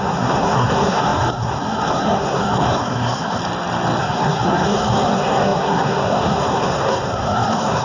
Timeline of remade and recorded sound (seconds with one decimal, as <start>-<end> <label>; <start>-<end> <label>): 0.0-3.4 remade; 3.4-4.0 recorded; 4.0-7.8 remade